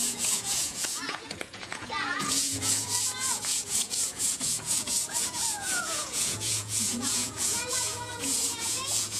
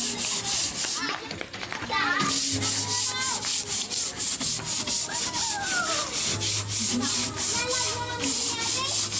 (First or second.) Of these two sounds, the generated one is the first